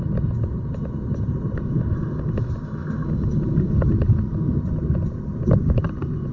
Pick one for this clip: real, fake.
real